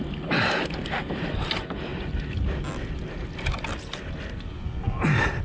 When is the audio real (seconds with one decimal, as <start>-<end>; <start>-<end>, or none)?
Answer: 0.0-5.4